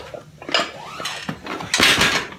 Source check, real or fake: real